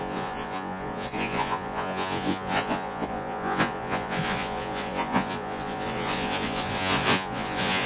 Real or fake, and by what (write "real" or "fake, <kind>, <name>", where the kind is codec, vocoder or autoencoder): fake, vocoder, Vocos